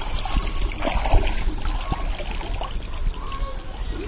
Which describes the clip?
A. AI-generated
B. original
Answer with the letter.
B